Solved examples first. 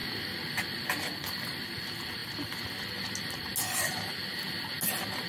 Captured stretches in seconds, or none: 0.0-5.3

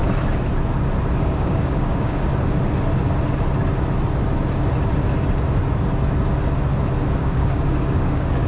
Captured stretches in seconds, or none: 0.0-1.2; 2.3-7.2

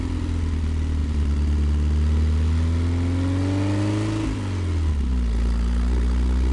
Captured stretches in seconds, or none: 0.0-6.5

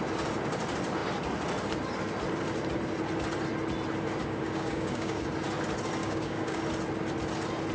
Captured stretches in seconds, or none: 0.0-4.2; 5.2-6.0; 6.6-7.7

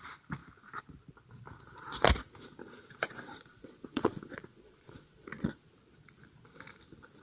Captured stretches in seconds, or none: 0.0-3.5; 5.7-7.2

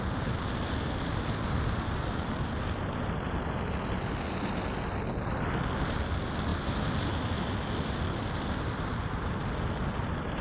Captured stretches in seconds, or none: 0.0-10.4

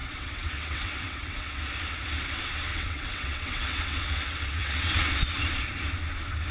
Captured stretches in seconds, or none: 1.6-2.7; 5.1-6.5

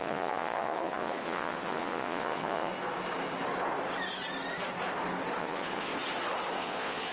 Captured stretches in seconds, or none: 2.7-5.4; 5.9-6.6